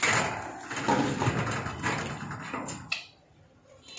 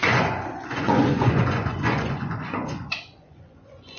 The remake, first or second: second